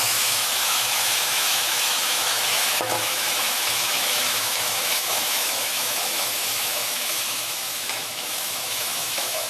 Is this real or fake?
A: fake